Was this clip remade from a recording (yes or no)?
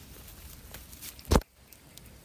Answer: no